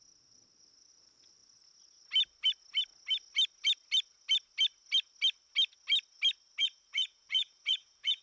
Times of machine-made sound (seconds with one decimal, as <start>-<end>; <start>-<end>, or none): 6.6-8.2